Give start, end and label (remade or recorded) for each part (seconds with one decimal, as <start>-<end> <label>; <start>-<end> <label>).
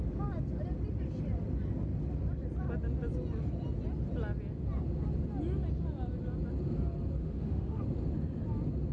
0.0-7.2 recorded; 7.2-7.8 remade; 7.8-8.9 recorded